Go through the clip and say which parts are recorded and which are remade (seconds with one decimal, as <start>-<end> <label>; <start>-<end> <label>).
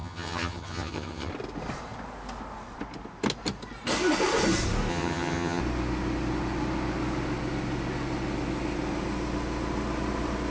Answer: 0.0-1.3 remade; 1.3-4.9 recorded; 4.9-5.6 remade; 5.6-10.5 recorded